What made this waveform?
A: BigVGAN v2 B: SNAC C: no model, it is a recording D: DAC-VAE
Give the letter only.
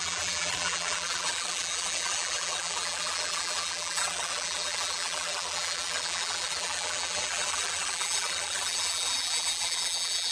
A